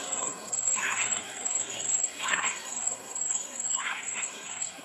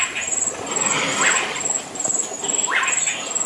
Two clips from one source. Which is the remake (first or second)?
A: first